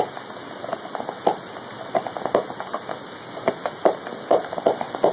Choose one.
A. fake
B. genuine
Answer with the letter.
B